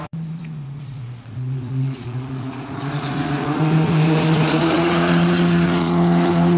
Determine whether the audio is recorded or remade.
remade